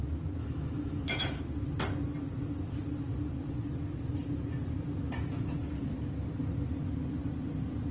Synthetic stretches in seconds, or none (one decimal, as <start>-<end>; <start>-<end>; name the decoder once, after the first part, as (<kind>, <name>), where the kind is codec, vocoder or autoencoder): 0.4-1.4 (autoencoder, DAC-VAE)